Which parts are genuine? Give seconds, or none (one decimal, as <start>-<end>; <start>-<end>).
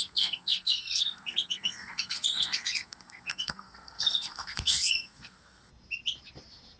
5.7-6.8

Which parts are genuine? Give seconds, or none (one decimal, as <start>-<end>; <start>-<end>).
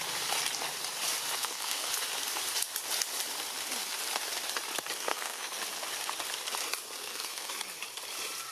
0.0-1.4; 1.9-5.1; 5.6-7.0; 7.5-8.5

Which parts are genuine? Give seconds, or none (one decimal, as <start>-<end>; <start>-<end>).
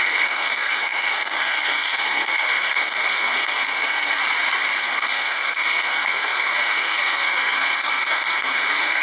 4.2-4.8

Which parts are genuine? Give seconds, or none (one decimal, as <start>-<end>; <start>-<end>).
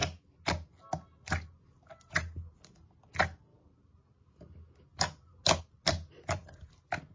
0.0-7.1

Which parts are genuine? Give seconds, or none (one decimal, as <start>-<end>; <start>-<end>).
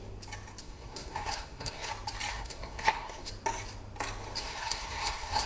0.0-0.6; 1.9-2.3; 3.3-4.4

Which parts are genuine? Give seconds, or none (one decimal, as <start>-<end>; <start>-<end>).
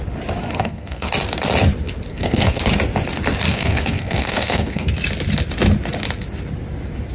0.0-0.4; 1.1-2.1; 2.6-3.5; 4.9-7.1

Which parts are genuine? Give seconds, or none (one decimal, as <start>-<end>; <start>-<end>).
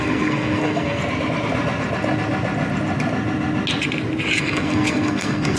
1.0-4.4